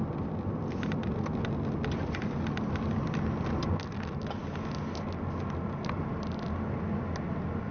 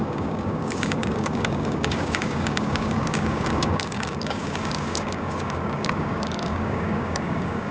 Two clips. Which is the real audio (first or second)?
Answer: first